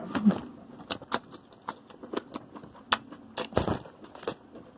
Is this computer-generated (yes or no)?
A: no